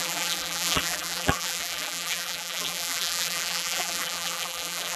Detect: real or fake fake